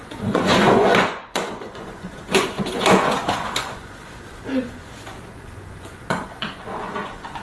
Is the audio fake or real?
fake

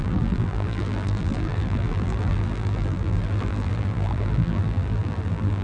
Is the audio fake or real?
fake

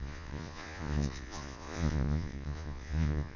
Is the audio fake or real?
fake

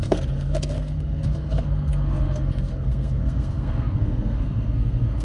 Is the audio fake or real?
fake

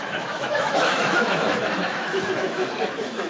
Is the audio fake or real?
fake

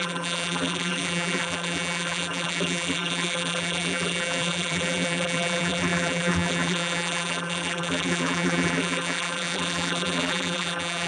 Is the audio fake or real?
fake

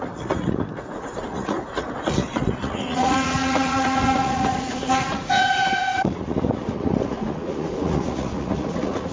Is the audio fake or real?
fake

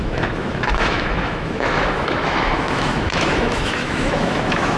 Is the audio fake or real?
fake